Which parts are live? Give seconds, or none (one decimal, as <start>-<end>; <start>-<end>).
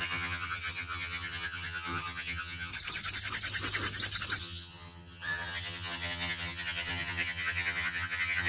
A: 2.7-4.4